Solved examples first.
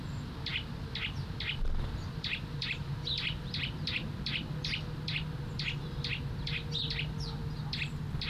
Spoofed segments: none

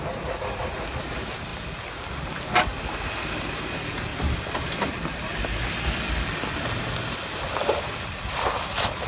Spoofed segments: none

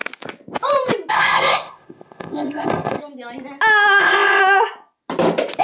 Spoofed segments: 1.1-3.0; 4.0-4.4

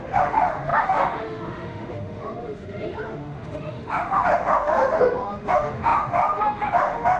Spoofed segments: 0.0-7.2

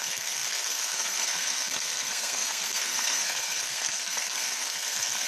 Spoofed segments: 0.0-5.3

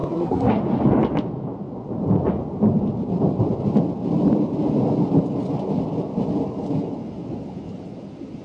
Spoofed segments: 0.0-0.6